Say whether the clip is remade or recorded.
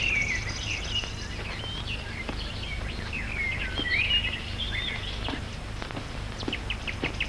recorded